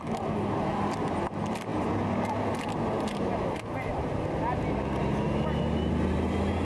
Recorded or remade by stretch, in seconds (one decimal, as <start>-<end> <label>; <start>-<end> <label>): 0.0-6.6 recorded